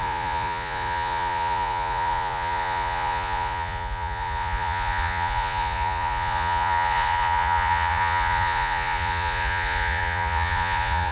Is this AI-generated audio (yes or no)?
yes